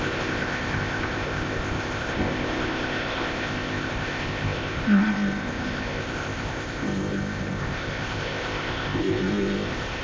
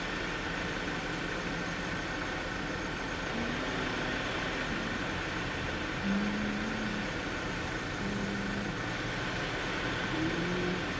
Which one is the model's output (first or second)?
first